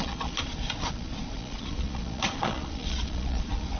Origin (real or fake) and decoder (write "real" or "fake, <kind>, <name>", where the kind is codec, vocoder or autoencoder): fake, vocoder, Vocos